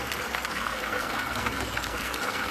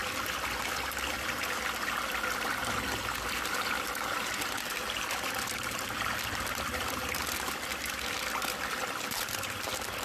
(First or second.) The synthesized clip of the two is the first